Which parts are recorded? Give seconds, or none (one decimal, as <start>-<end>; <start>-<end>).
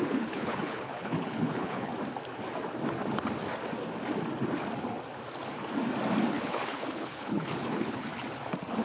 1.9-6.3; 8.1-8.8